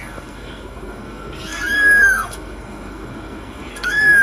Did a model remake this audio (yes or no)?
yes